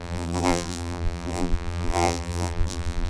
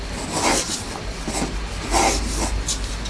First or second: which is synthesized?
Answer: first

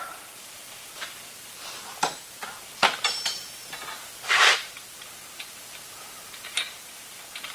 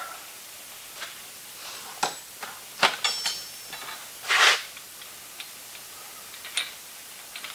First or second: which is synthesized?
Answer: first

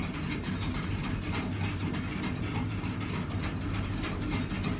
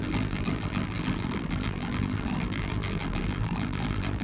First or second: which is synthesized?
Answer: second